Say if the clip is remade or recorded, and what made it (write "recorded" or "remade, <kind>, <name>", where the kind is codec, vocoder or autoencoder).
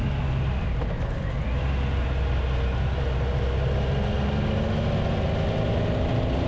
recorded